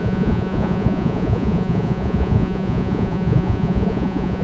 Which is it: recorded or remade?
remade